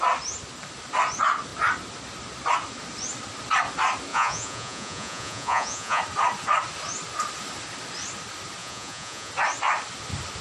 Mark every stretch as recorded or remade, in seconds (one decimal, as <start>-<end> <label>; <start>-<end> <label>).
0.0-4.1 recorded; 4.1-6.0 remade; 6.0-8.6 recorded; 8.6-9.3 remade; 9.3-10.4 recorded